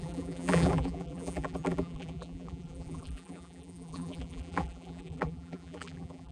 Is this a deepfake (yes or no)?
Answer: yes